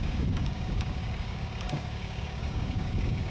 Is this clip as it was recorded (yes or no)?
no